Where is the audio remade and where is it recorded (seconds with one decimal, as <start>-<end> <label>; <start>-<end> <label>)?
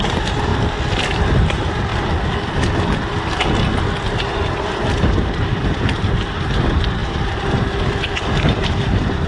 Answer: 0.0-0.5 remade; 0.5-1.2 recorded; 1.2-1.9 remade; 1.9-4.0 recorded; 4.0-7.0 remade; 7.0-8.4 recorded; 8.4-9.3 remade